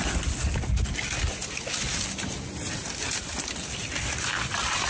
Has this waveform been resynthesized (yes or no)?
no